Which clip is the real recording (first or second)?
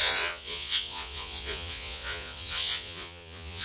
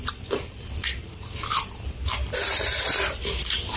second